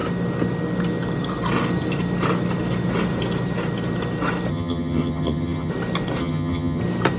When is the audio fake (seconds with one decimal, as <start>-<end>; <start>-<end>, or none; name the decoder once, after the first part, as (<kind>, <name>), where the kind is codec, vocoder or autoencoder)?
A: 4.5-5.7 (vocoder, HiFi-GAN); 6.2-6.8